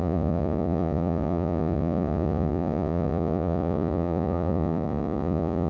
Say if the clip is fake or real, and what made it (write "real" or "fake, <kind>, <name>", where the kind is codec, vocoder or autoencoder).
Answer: fake, vocoder, Vocos